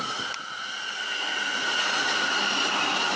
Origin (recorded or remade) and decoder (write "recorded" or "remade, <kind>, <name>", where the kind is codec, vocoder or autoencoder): recorded